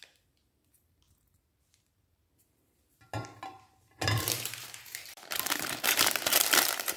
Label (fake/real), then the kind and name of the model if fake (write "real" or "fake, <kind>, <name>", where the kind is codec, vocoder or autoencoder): fake, vocoder, BigVGAN v2